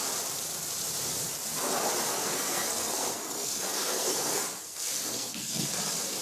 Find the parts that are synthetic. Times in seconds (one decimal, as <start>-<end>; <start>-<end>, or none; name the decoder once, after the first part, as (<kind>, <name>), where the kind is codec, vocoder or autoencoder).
2.1-5.8 (codec, SNAC)